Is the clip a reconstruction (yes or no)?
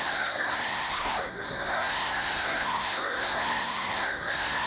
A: yes